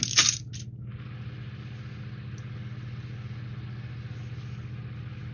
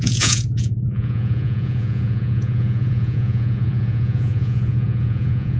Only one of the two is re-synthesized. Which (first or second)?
second